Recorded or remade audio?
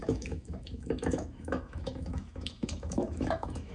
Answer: remade